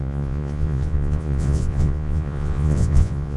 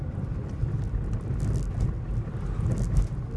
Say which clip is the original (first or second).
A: second